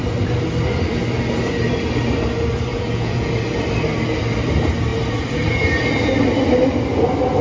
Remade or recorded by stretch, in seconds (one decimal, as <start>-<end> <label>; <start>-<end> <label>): 0.0-2.7 recorded; 2.7-3.3 remade; 3.3-7.4 recorded

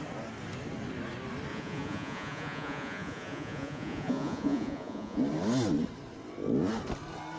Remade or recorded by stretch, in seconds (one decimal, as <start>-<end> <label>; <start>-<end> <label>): 0.0-1.5 recorded; 1.5-5.2 remade; 5.2-7.4 recorded

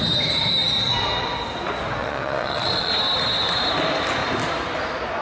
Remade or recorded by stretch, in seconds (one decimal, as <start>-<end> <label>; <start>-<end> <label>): 0.0-2.0 recorded; 2.0-2.9 remade; 2.9-5.2 recorded